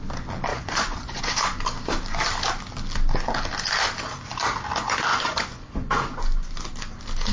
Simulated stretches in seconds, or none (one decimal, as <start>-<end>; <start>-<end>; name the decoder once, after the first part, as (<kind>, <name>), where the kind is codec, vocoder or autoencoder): 0.5-1.2 (vocoder, Vocos); 5.1-6.5